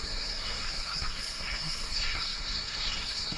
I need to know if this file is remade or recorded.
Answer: remade